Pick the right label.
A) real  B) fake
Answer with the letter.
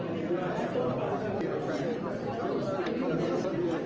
A